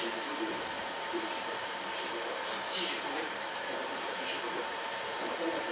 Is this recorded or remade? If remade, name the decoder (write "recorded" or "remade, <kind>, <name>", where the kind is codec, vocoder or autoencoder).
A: remade, vocoder, BigVGAN v2